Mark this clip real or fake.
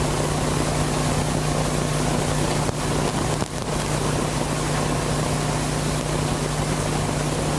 real